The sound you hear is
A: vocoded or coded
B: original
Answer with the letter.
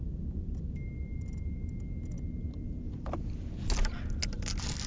B